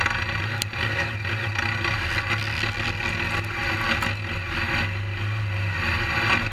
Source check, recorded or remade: recorded